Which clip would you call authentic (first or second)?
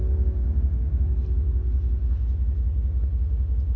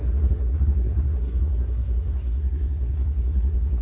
first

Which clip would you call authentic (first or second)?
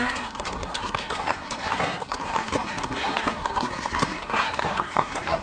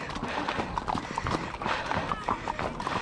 second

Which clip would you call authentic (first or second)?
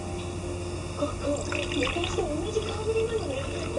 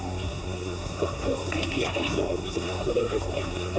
first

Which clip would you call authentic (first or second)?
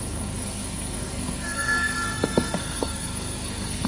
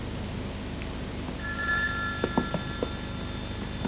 second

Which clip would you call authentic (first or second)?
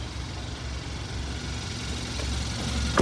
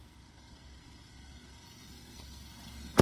first